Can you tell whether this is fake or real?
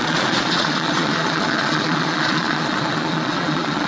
fake